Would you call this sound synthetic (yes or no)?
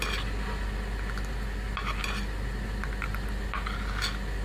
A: no